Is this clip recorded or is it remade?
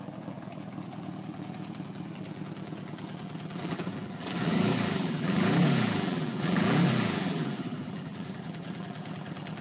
remade